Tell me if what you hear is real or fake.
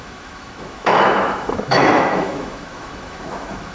fake